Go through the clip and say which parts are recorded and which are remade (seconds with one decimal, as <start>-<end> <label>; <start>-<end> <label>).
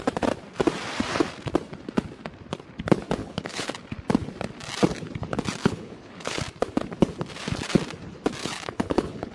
0.0-3.2 recorded; 3.2-3.7 remade; 3.7-5.6 recorded; 5.6-6.4 remade; 6.4-8.4 recorded; 8.4-9.3 remade